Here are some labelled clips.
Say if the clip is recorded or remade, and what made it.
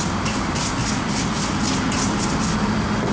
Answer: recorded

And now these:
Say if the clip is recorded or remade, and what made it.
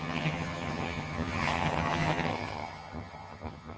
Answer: remade, vocoder, HiFi-GAN